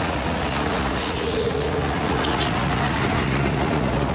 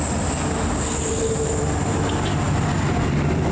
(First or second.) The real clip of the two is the second